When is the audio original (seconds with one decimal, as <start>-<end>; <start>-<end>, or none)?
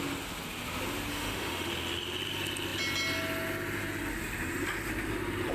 0.0-1.1; 1.7-5.5